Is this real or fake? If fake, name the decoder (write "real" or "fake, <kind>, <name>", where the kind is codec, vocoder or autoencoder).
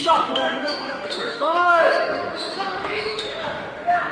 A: fake, autoencoder, DAC-VAE